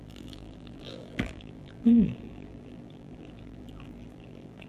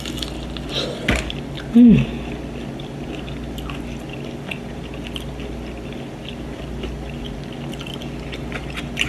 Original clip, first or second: second